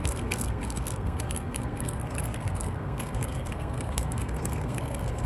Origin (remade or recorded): remade